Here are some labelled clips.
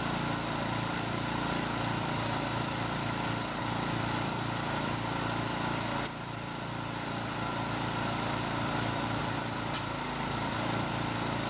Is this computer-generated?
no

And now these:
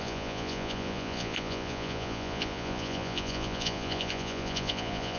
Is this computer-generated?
yes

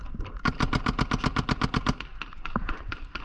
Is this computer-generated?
no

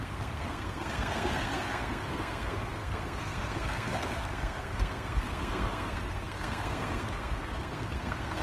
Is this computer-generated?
yes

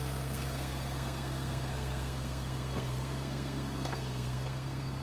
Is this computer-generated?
yes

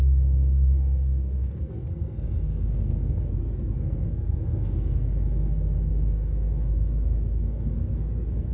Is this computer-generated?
yes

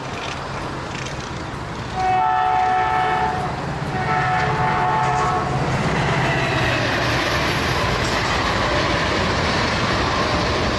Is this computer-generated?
no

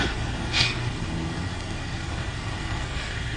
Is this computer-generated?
yes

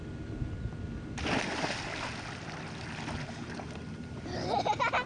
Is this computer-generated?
no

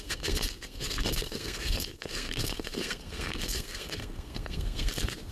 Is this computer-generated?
yes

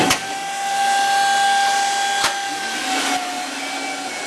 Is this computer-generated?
no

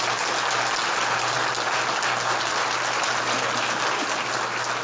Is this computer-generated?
no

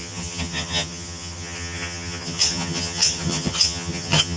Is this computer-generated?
yes